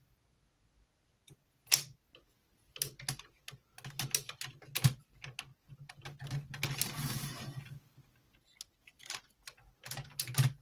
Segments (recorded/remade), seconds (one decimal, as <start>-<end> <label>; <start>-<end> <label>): 0.0-10.6 recorded